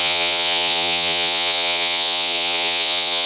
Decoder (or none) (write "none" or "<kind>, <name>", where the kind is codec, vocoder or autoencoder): vocoder, Vocos